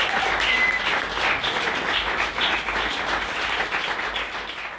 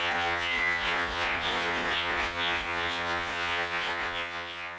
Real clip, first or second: first